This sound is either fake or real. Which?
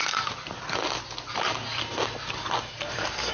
real